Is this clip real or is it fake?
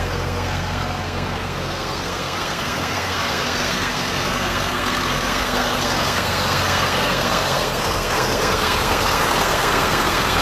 fake